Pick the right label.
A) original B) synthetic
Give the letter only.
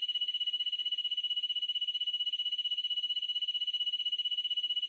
B